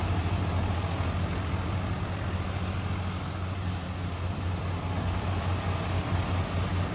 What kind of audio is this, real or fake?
real